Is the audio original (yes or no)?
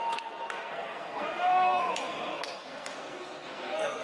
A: no